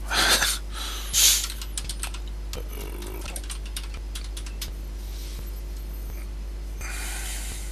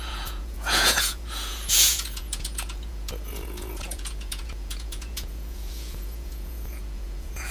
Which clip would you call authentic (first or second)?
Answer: first